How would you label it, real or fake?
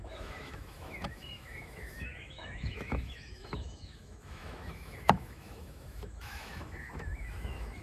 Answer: fake